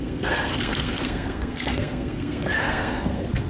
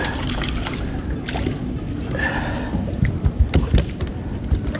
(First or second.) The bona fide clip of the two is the second